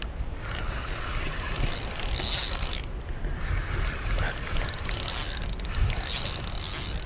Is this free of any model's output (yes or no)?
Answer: yes